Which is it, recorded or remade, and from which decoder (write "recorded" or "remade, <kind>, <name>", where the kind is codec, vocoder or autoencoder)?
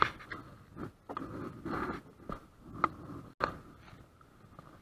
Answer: recorded